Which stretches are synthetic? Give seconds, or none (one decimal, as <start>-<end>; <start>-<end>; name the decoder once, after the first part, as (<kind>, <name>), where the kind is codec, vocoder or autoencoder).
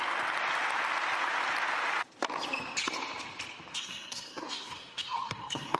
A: 3.7-5.8 (codec, SNAC)